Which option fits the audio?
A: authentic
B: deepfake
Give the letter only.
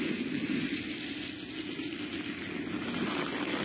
A